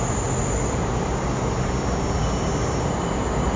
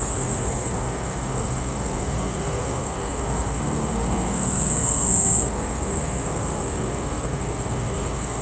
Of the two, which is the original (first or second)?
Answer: first